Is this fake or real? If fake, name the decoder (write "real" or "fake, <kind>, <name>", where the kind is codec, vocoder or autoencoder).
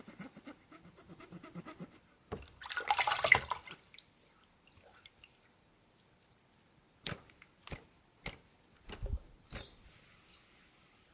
real